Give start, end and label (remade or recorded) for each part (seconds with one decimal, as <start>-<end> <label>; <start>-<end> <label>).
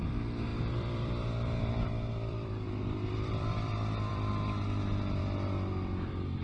0.0-0.5 recorded; 0.5-4.3 remade; 4.3-6.4 recorded